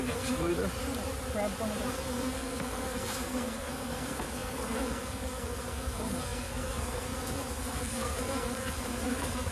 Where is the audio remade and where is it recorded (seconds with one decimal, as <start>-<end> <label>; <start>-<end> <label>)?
0.0-0.5 remade; 0.5-1.9 recorded; 1.9-9.5 remade